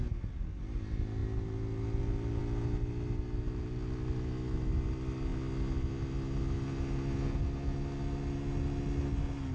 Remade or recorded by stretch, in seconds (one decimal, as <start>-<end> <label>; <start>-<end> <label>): 0.0-9.5 recorded